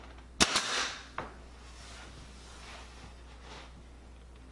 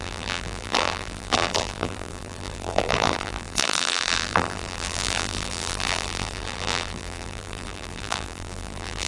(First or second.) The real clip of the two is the first